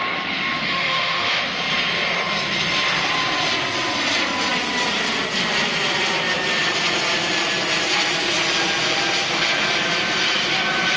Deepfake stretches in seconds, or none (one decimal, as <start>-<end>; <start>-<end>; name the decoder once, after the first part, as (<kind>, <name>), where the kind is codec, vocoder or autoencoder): 0.6-1.4 (autoencoder, DAC-VAE)